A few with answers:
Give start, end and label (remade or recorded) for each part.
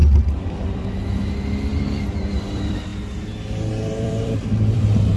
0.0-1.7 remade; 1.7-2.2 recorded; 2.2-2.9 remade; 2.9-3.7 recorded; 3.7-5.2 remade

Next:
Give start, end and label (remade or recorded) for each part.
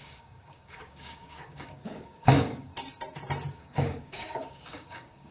0.0-2.7 remade; 2.7-3.5 recorded; 3.5-5.3 remade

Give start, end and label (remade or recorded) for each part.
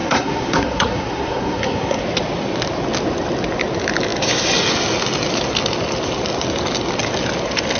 0.0-2.0 remade; 2.0-7.8 recorded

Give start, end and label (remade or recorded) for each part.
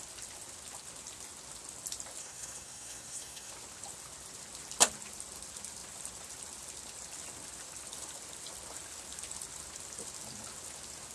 0.0-2.2 recorded; 2.2-3.5 remade; 3.5-11.1 recorded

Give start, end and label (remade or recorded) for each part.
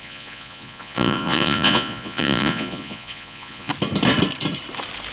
0.0-3.7 remade; 3.7-5.1 recorded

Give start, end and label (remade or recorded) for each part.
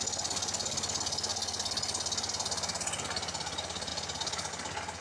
0.0-5.0 recorded